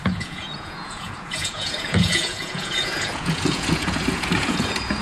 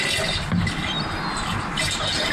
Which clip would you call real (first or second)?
second